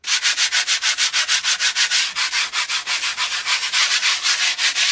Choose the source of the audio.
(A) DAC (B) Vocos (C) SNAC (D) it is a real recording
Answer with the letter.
D